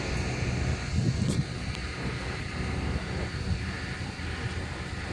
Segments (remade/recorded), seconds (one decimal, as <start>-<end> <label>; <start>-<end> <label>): 0.0-5.1 recorded